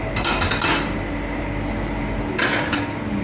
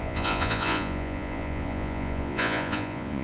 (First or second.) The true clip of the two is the first